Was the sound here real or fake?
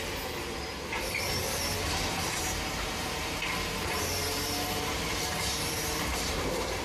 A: fake